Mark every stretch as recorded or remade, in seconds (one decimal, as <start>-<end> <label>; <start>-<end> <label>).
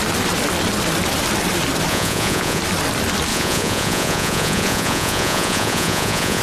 0.0-1.9 recorded; 1.9-2.6 remade; 2.6-3.3 recorded; 3.3-6.4 remade